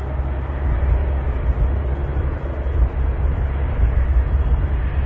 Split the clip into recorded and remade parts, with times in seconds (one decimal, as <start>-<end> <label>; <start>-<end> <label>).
0.0-5.1 recorded